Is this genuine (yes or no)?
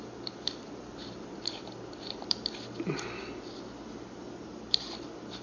yes